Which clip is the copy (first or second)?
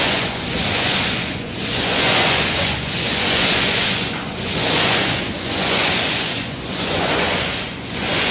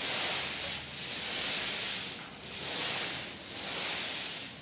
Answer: first